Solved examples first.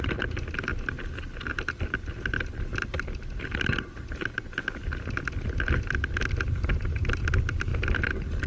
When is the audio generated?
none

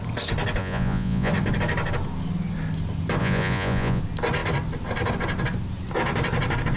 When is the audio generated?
0.6-1.3; 3.2-4.0